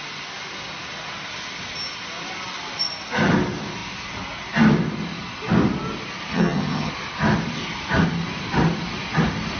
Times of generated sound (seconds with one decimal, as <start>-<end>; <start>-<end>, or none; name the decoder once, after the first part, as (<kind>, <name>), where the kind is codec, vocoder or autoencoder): 6.3-6.9 (vocoder, HiFi-GAN)